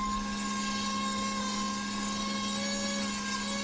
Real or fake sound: real